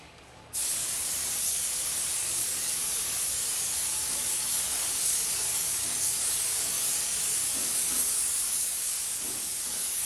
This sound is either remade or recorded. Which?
remade